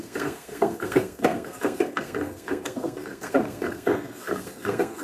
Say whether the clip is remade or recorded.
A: remade